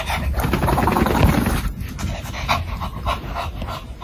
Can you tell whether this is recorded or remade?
recorded